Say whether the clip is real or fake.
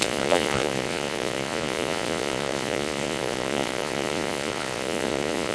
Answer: fake